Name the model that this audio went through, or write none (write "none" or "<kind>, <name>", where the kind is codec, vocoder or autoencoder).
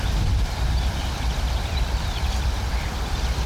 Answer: vocoder, BigVGAN v2